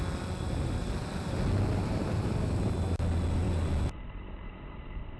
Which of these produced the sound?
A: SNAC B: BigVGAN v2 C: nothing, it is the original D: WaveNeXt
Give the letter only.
C